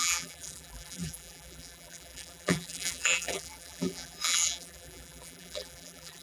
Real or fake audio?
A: fake